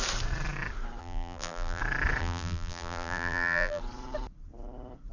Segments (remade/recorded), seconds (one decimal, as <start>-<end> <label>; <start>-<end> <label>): 0.0-1.0 recorded; 1.0-1.8 remade; 1.8-2.2 recorded; 2.2-3.8 remade; 3.8-5.1 recorded